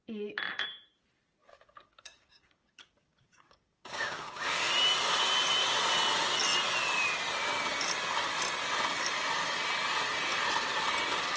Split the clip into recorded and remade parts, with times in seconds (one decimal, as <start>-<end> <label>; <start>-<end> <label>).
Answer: 0.0-1.4 recorded; 1.4-4.7 remade; 4.7-11.4 recorded